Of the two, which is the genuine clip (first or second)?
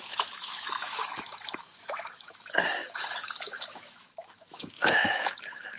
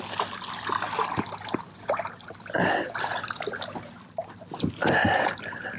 second